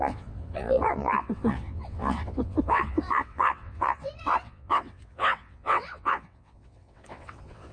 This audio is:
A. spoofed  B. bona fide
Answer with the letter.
A